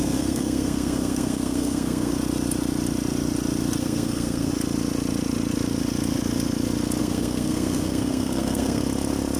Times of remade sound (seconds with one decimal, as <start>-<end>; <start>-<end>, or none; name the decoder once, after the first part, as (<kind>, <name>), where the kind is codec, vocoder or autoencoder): 0.0-2.1 (codec, SNAC); 3.8-4.5; 7.0-8.8